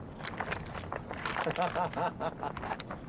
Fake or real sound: real